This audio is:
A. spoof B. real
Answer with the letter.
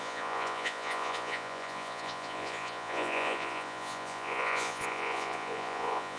A